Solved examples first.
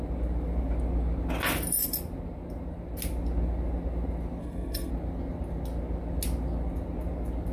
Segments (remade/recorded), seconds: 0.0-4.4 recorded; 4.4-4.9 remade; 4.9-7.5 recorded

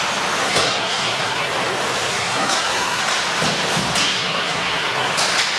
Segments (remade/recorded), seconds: 0.0-0.4 recorded; 0.4-1.5 remade; 1.5-2.1 recorded; 2.1-3.0 remade; 3.0-4.0 recorded; 4.0-5.1 remade; 5.1-5.6 recorded